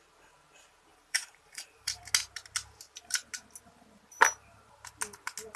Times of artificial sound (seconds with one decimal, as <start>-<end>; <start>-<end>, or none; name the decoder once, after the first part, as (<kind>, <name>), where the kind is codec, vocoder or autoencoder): 0.9-2.0 (vocoder, BigVGAN v2)